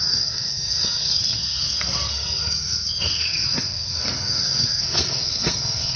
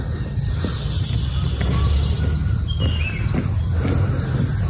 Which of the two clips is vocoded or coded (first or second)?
first